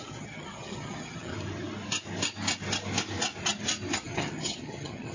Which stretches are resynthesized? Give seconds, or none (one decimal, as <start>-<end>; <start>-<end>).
0.0-1.3; 3.9-5.1

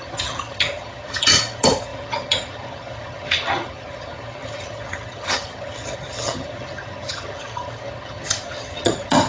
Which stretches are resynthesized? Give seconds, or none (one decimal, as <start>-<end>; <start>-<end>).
0.0-9.3

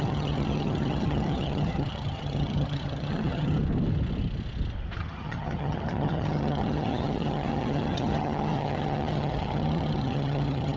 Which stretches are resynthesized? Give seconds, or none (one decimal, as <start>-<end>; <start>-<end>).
0.0-3.6; 5.0-10.8

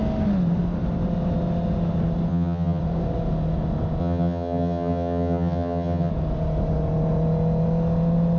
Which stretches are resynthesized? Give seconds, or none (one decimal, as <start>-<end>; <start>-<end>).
2.3-2.8; 4.0-6.1